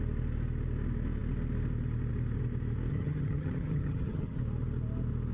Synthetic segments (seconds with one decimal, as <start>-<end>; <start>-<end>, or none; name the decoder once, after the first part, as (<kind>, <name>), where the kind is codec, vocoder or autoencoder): 2.9-4.4 (vocoder, HiFi-GAN)